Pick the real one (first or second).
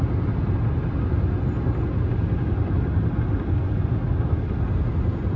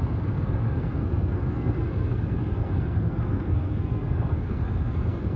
first